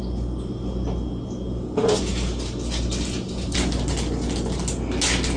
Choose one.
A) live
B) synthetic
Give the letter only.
A